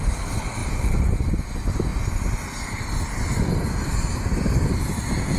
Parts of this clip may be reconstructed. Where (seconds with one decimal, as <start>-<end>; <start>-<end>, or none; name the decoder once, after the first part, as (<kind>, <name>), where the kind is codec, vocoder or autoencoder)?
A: 0.0-1.9 (vocoder, BigVGAN v2)